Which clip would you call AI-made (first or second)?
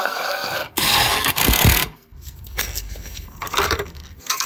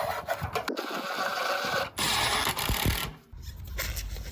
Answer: first